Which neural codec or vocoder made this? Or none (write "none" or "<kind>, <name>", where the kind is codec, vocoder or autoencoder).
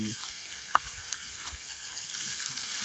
codec, SNAC